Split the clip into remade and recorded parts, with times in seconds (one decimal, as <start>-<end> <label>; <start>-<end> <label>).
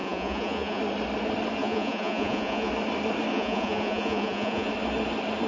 0.0-0.8 remade; 0.8-1.6 recorded; 1.6-2.7 remade; 2.7-3.3 recorded; 3.3-4.7 remade; 4.7-5.5 recorded